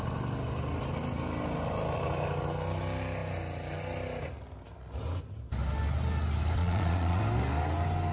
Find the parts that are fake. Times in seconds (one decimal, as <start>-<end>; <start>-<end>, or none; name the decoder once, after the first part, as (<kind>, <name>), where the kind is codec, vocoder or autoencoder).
6.6-7.2 (vocoder, Vocos)